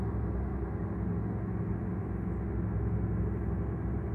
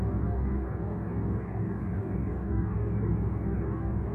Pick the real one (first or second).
first